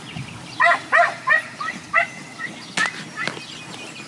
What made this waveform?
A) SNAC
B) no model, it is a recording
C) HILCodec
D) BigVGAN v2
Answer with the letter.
B